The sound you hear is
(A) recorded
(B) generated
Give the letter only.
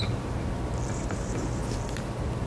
A